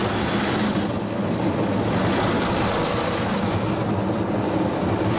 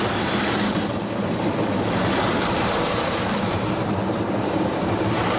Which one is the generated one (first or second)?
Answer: second